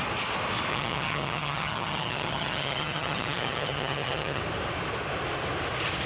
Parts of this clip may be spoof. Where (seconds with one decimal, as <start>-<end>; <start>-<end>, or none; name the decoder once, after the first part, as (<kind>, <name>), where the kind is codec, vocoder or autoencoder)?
0.7-4.4 (vocoder, HiFi-GAN)